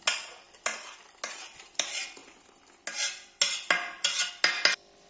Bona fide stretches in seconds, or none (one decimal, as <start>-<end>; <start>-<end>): 0.0-5.1